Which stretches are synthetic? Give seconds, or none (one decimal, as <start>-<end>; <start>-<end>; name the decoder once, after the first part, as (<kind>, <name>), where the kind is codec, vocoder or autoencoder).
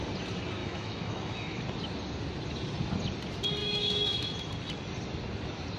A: 0.6-1.6 (autoencoder, DAC-VAE); 3.6-4.5